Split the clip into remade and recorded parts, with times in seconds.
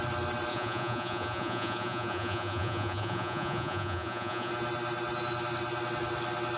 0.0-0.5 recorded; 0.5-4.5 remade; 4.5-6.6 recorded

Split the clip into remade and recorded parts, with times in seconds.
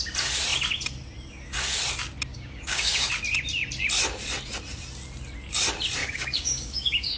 0.0-2.3 recorded; 2.3-3.1 remade; 3.1-6.0 recorded; 6.0-7.2 remade